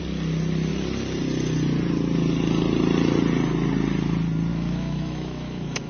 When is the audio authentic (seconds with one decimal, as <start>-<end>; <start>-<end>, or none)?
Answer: 0.0-4.5